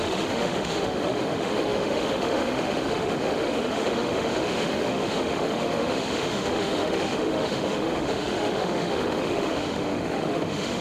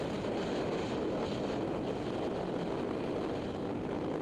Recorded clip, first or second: second